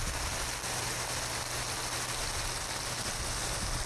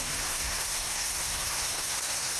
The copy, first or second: second